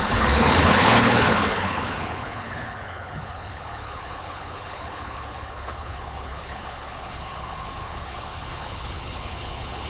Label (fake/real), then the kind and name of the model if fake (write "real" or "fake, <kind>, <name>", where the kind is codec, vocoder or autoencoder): fake, codec, HILCodec